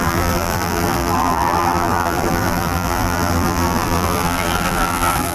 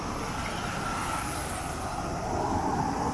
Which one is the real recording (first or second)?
second